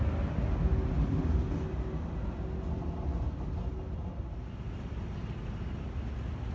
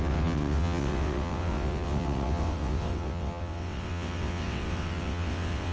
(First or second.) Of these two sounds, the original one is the first